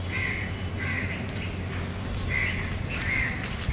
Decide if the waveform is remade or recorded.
recorded